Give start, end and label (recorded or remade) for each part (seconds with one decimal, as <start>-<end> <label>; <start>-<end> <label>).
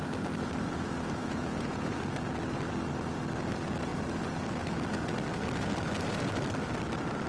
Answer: 0.0-1.2 recorded; 1.2-2.0 remade; 2.0-7.3 recorded